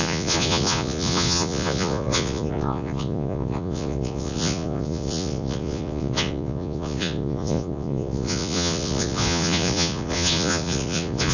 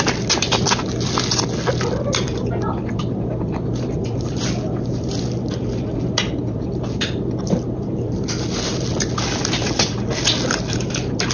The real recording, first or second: second